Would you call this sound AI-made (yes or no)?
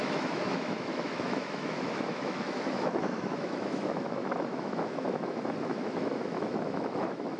yes